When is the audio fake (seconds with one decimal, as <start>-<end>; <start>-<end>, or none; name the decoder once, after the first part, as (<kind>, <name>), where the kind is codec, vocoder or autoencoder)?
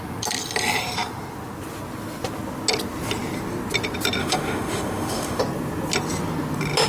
4.2-5.4 (autoencoder, DAC-VAE)